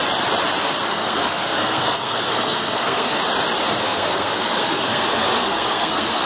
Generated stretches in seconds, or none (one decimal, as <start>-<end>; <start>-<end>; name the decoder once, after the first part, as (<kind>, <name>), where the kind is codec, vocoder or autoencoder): 0.6-3.2 (codec, SNAC); 3.8-6.3